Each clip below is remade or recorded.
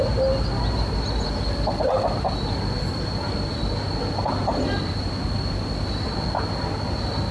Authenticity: recorded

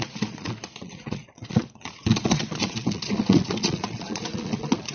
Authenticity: remade